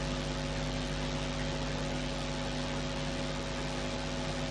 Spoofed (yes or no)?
no